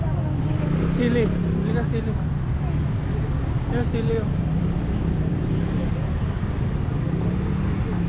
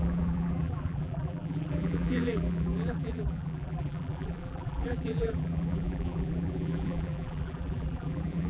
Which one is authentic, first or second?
first